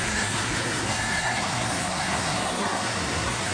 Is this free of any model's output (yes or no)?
no